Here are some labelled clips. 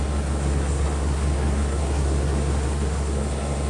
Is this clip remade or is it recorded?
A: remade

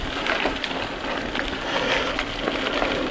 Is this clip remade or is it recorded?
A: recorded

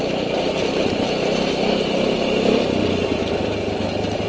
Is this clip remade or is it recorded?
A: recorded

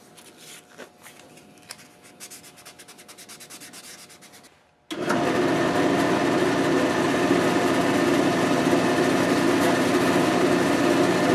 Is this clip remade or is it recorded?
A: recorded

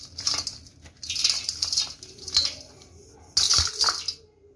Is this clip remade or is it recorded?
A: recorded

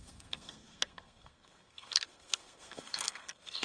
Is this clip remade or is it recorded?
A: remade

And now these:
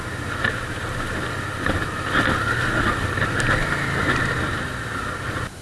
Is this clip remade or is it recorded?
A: recorded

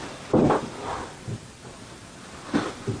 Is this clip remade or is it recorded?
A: recorded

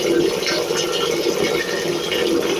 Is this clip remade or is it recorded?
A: recorded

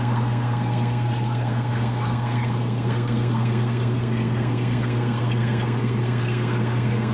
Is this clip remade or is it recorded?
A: remade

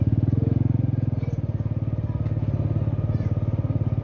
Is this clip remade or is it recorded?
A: recorded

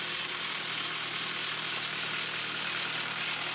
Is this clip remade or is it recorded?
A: recorded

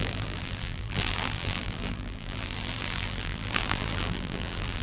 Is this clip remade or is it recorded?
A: remade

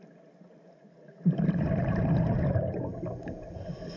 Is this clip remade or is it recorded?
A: recorded